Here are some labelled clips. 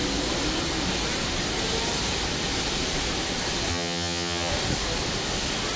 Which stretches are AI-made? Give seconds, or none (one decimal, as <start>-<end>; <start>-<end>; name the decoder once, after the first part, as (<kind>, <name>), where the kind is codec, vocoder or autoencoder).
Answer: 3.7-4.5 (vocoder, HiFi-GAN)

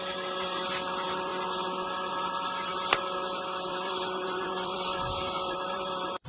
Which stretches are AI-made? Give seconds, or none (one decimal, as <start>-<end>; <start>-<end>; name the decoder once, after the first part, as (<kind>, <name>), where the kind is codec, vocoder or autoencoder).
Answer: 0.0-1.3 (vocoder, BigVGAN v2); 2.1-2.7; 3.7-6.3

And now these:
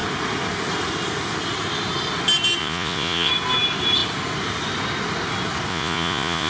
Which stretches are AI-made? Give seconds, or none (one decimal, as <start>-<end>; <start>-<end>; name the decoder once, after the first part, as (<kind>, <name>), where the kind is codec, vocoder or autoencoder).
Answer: 2.6-3.3 (vocoder, Vocos); 5.7-6.5